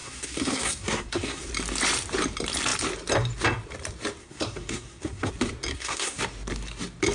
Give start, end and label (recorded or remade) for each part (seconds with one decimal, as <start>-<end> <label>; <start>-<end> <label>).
0.0-1.5 remade; 1.5-4.2 recorded; 4.2-5.3 remade; 5.3-5.7 recorded; 5.7-6.2 remade; 6.2-7.1 recorded